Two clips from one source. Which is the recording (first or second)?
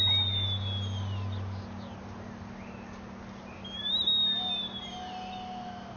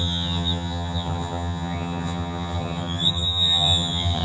first